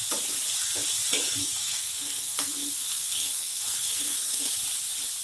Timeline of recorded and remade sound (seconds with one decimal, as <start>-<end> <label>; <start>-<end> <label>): 0.0-1.4 recorded; 1.4-4.5 remade; 4.5-5.2 recorded